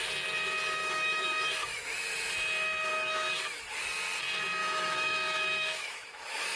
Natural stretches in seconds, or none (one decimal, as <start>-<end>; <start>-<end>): 0.0-0.8; 1.8-2.9; 3.7-4.6